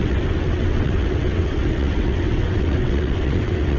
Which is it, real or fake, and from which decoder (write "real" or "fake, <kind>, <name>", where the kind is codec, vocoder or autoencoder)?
fake, vocoder, WaveNeXt